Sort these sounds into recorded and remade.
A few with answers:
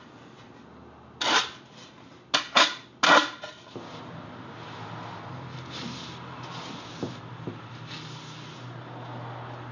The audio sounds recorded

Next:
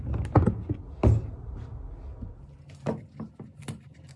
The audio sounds recorded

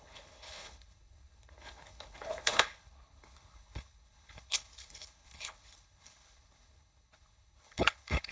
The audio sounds remade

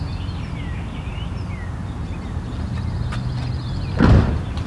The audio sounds recorded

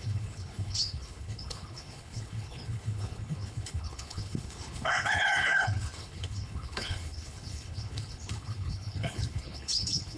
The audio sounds remade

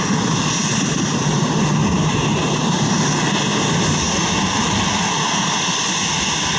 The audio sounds recorded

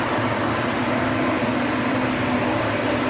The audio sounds recorded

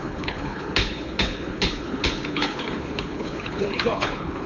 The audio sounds remade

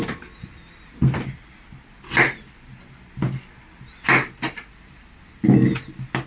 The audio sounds recorded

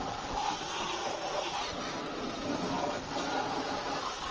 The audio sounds recorded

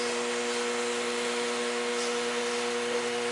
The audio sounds recorded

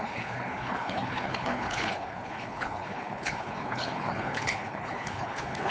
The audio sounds remade